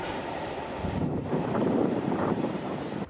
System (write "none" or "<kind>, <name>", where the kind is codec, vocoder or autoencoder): vocoder, BigVGAN v2